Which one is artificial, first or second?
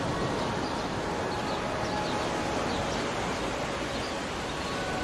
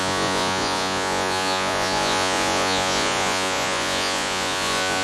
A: second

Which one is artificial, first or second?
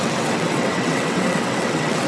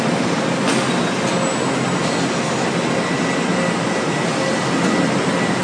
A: first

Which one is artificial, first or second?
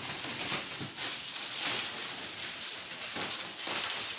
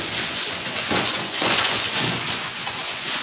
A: second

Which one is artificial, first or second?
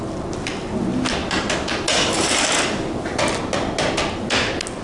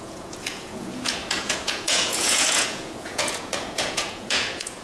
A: second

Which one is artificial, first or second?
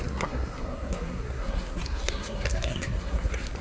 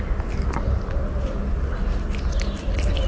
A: first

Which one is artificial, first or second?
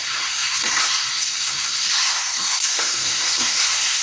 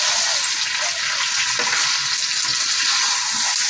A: first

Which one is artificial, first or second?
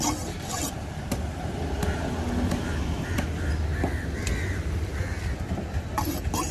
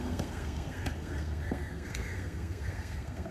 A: second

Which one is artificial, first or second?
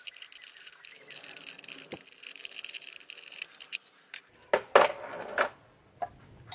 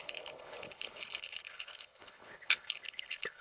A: second